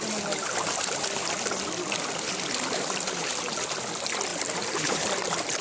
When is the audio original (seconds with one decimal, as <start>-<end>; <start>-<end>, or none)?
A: 0.0-4.3; 5.0-5.6